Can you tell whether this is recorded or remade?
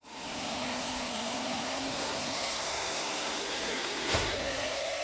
remade